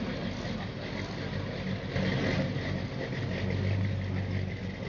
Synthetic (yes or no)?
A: no